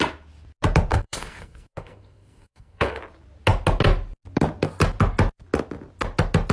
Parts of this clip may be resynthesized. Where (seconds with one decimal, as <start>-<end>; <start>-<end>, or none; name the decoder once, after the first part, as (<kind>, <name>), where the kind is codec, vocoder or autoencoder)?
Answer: 0.9-3.0 (codec, SNAC)